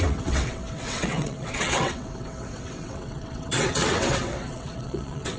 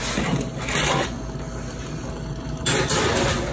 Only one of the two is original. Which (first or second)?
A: second